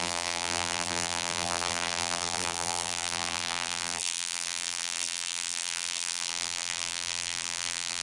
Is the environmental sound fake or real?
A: fake